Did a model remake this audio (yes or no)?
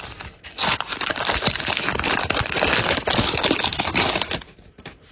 no